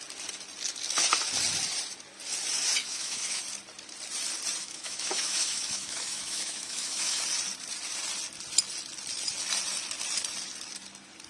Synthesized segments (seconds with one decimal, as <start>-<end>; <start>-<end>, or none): 2.8-3.4; 4.6-7.2